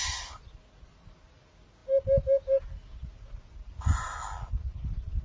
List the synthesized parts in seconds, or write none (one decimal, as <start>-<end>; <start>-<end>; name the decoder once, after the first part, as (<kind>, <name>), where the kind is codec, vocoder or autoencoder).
none